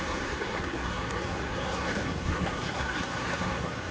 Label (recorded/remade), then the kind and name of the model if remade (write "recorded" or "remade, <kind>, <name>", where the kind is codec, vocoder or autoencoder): remade, codec, SNAC